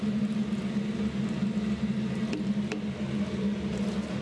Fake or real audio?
real